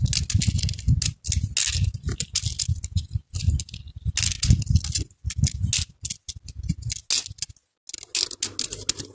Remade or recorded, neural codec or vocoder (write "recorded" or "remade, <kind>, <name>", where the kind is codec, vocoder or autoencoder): recorded